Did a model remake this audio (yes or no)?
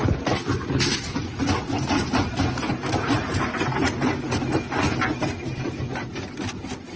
no